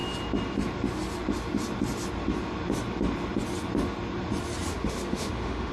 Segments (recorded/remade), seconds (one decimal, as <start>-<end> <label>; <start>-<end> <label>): 0.0-4.7 recorded; 4.7-5.7 remade